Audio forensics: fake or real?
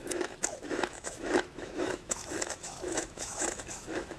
fake